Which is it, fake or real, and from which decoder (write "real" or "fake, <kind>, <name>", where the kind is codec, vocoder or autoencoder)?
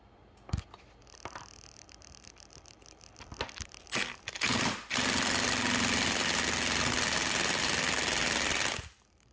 real